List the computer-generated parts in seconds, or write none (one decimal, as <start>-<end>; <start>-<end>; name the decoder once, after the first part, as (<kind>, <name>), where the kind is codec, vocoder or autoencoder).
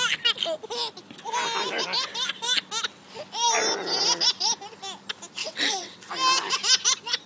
5.4-6.1 (vocoder, WaveNeXt)